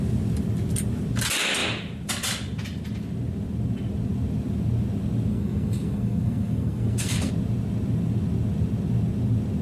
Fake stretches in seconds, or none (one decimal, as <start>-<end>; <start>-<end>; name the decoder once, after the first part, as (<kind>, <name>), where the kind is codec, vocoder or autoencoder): 5.3-7.3 (codec, SNAC)